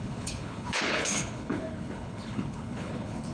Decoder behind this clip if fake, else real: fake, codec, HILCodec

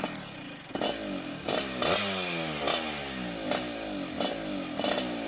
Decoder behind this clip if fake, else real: real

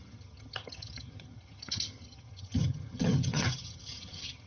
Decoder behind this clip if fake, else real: fake, vocoder, HiFi-GAN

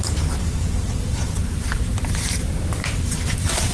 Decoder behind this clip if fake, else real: fake, vocoder, BigVGAN v2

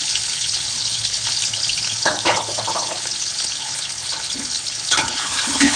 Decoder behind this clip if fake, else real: fake, codec, HILCodec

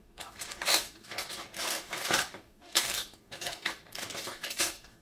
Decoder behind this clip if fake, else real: fake, codec, DAC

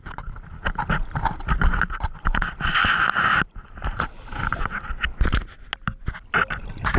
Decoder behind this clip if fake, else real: real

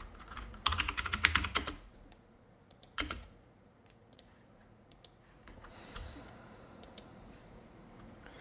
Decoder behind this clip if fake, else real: fake, vocoder, Vocos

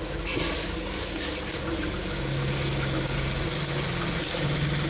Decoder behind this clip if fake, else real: real